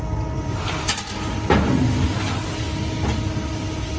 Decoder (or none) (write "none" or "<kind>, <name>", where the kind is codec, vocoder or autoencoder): none